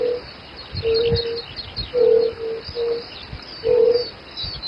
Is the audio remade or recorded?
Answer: recorded